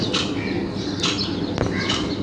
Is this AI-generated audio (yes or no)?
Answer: no